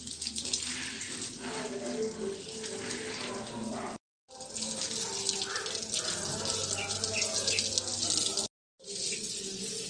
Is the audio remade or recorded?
recorded